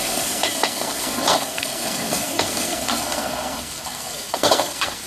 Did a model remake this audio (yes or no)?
yes